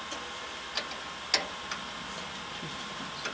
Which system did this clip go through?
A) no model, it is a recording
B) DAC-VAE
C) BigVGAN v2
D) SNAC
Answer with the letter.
A